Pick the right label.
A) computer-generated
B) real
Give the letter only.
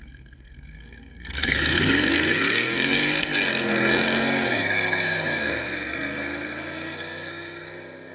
A